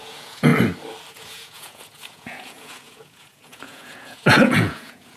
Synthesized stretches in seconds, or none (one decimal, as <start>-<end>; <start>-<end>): 0.0-0.5; 1.1-5.2

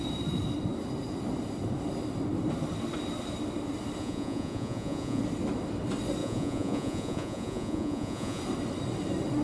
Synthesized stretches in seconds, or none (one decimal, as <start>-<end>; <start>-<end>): 4.0-5.2; 6.2-8.4

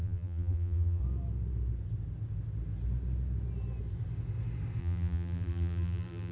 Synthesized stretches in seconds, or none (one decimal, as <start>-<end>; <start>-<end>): 0.0-1.0; 4.8-6.3

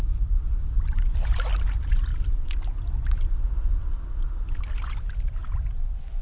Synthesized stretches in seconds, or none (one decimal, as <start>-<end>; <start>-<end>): none

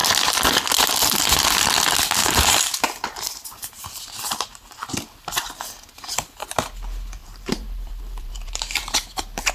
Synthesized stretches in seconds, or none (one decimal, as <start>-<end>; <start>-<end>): 2.2-4.9; 7.2-9.5

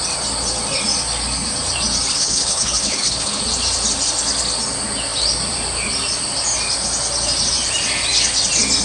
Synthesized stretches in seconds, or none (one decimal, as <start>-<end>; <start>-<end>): 2.1-3.4